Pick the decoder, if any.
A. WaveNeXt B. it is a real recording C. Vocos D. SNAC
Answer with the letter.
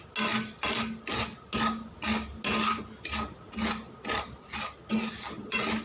B